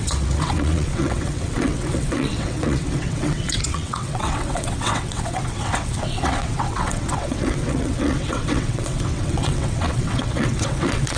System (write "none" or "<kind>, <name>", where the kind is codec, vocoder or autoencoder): vocoder, WaveNeXt